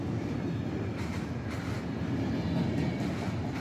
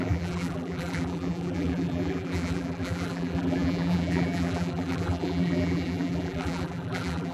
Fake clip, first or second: second